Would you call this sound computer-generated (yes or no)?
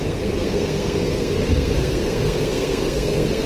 yes